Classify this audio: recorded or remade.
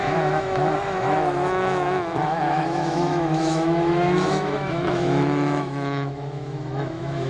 remade